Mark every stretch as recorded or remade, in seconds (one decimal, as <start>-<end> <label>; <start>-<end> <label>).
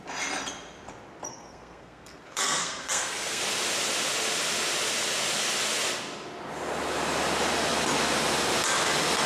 0.0-1.3 recorded; 1.3-3.4 remade; 3.4-9.3 recorded